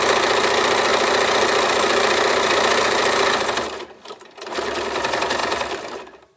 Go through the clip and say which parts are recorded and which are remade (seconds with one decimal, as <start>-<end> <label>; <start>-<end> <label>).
0.0-6.4 recorded